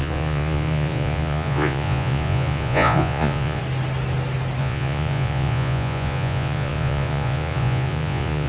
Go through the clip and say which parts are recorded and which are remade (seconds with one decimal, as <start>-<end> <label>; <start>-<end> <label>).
0.0-3.6 remade; 3.6-4.6 recorded; 4.6-8.5 remade